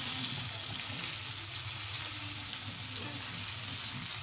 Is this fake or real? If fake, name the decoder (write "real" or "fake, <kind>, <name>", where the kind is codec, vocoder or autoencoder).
real